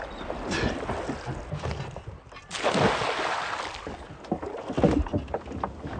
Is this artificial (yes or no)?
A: no